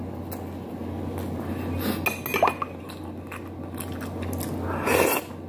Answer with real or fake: real